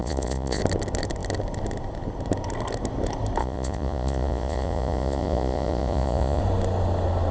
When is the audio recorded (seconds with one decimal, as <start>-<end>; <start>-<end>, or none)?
0.6-3.4; 6.4-7.3